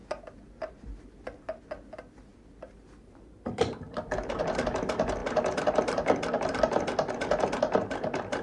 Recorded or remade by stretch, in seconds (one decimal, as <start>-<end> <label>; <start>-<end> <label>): 0.0-0.7 remade; 0.7-2.3 recorded; 2.3-4.3 remade; 4.3-5.2 recorded; 5.2-7.1 remade; 7.1-8.4 recorded